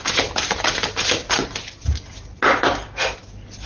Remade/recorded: recorded